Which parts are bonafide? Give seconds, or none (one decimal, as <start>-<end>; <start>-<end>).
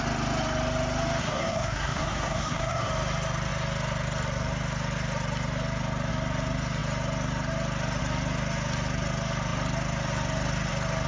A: 0.0-1.2; 2.9-11.1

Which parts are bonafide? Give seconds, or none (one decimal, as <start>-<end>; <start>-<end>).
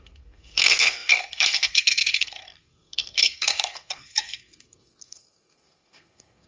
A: none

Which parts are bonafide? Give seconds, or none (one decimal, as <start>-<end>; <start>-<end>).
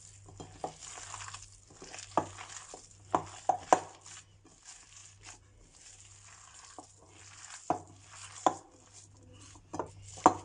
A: 0.0-10.4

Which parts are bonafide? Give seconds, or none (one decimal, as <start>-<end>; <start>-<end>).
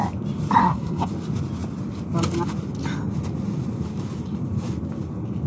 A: 0.0-0.6; 1.1-5.5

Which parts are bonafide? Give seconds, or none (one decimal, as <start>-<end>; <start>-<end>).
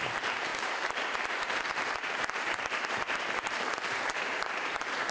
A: none